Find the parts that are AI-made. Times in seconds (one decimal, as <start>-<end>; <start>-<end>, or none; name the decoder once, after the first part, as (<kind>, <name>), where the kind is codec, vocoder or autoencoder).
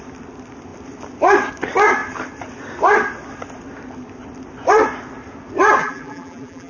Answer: 5.8-6.7 (vocoder, BigVGAN v2)